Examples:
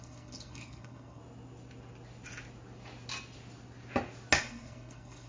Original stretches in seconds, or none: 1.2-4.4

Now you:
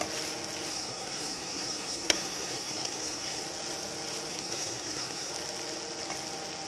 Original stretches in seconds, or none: 0.0-0.7; 3.4-4.3; 5.3-6.7

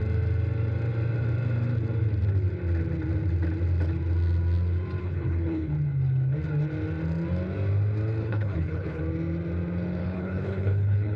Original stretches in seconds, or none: 0.0-5.0; 5.7-8.2; 9.0-10.0